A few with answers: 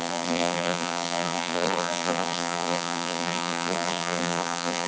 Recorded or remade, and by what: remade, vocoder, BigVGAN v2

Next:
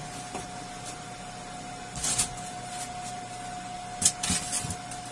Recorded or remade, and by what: recorded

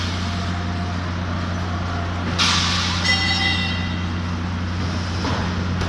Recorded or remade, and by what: recorded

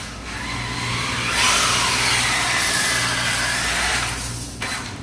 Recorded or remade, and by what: recorded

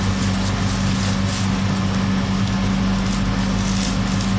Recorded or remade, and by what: recorded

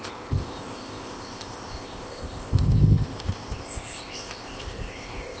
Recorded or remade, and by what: remade, codec, ZipCodec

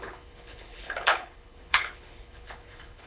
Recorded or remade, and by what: remade, codec, HILCodec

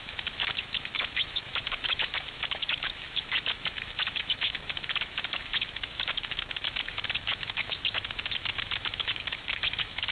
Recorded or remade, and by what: remade, autoencoder, DAC-VAE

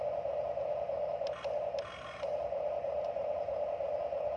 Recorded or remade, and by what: recorded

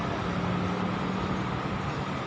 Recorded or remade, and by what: recorded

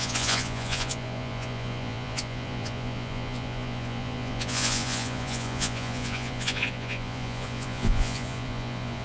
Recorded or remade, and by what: remade, vocoder, Vocos